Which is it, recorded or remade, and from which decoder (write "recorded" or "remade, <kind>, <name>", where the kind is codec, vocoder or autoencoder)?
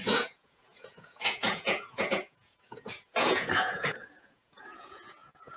remade, vocoder, Vocos